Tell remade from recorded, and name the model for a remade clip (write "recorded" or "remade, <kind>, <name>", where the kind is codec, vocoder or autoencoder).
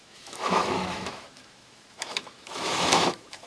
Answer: remade, autoencoder, DAC-VAE